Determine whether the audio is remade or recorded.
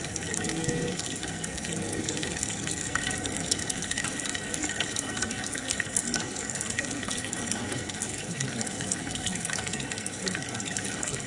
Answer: remade